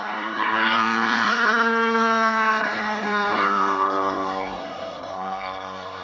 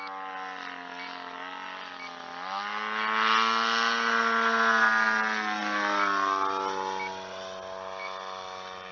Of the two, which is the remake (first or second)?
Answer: first